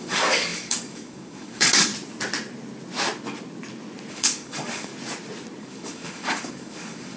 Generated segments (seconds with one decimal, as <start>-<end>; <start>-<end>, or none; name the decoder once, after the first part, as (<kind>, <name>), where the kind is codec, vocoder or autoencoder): 0.0-1.9 (codec, DAC); 4.1-4.9; 5.6-7.2